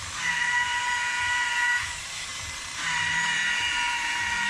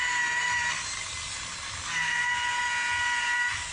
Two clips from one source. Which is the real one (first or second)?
second